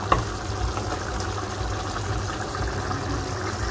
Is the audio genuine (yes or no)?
yes